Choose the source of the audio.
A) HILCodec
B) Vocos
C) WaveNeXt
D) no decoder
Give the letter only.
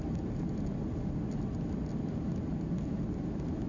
D